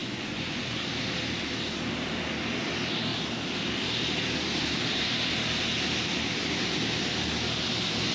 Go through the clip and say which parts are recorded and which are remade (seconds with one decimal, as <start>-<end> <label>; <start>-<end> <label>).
0.0-0.8 remade; 0.8-8.1 recorded